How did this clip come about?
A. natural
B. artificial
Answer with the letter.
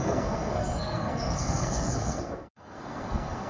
B